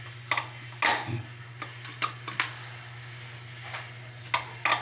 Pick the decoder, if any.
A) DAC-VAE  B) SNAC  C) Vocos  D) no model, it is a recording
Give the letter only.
D